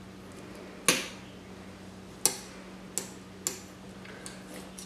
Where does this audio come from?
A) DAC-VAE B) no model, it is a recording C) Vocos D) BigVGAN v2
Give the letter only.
B